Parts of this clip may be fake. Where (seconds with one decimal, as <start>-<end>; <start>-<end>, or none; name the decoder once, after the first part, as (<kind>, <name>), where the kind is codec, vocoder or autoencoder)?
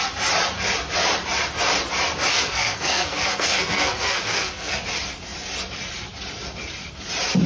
2.3-4.8 (codec, SNAC)